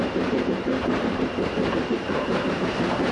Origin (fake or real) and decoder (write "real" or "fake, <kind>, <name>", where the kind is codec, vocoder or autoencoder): fake, vocoder, BigVGAN v2